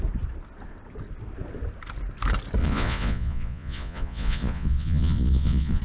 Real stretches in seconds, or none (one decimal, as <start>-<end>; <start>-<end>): 0.0-2.6